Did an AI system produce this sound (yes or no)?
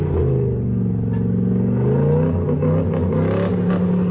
no